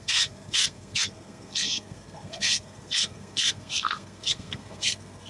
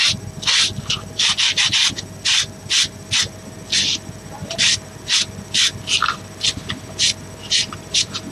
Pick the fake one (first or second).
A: first